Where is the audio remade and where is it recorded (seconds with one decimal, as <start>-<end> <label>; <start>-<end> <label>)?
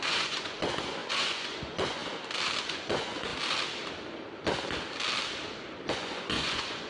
0.0-2.0 remade; 2.0-2.6 recorded; 2.6-3.3 remade; 3.3-5.9 recorded; 5.9-6.9 remade